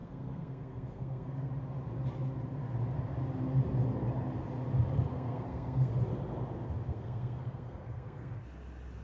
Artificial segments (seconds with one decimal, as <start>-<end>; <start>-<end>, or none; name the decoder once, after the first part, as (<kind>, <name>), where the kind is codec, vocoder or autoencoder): 0.0-1.5 (codec, SNAC); 5.1-5.9; 6.9-8.3